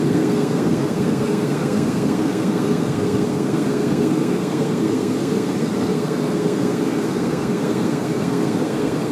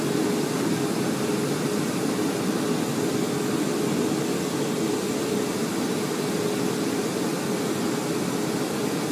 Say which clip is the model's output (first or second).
first